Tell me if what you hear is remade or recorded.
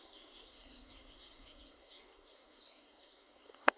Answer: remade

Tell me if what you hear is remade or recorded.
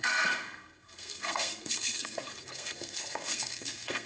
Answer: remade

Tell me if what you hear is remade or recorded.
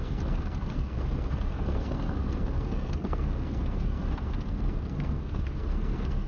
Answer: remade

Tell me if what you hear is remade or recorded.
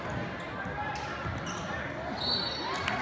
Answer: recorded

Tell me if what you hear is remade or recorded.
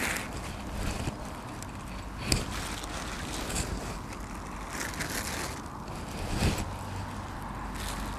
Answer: recorded